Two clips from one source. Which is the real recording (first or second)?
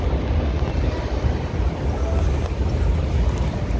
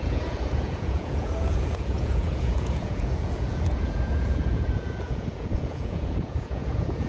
first